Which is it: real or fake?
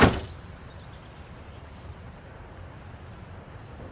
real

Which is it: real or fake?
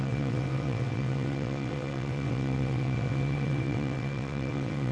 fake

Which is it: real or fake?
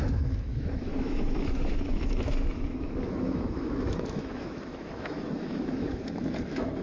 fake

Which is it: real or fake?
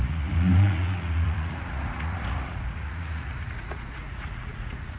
fake